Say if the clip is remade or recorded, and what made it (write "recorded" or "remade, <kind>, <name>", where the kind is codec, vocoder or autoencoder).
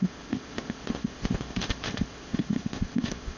remade, codec, ZipCodec